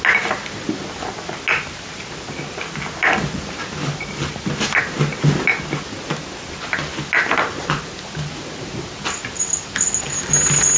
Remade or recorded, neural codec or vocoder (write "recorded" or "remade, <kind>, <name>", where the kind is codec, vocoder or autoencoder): recorded